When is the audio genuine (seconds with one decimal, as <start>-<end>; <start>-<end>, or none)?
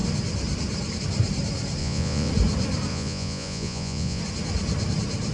0.0-1.8; 2.3-2.9; 4.2-5.3